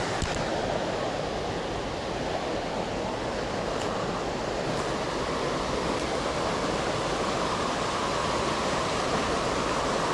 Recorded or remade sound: recorded